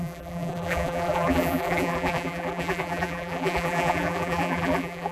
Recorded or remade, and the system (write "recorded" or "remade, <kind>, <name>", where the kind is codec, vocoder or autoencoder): remade, vocoder, BigVGAN v2